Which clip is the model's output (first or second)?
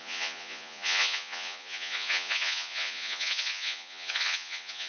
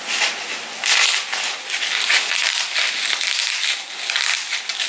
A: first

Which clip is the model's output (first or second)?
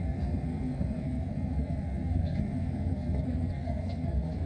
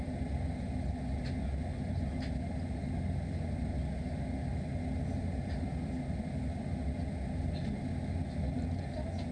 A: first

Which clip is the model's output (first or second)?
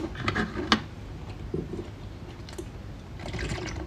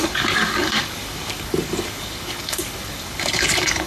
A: second